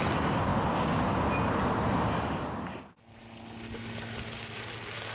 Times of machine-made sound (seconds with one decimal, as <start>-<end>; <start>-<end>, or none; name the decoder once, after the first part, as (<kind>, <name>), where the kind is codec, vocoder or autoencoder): none